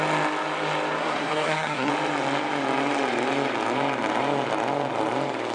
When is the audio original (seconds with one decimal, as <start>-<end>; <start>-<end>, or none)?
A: 0.0-1.0; 1.9-5.5